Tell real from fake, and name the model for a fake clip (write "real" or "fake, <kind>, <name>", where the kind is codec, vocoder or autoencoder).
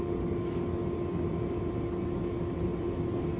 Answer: real